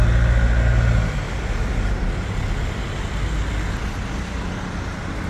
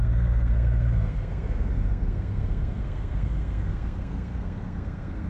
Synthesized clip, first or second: second